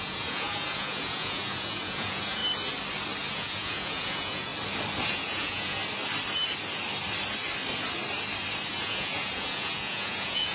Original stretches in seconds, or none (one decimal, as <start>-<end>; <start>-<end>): 2.4-3.3; 4.5-5.1; 5.8-8.7